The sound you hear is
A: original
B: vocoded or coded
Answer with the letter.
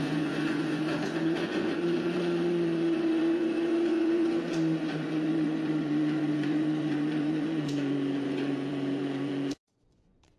B